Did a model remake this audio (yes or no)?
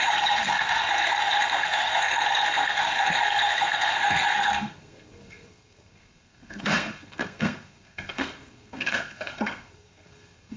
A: yes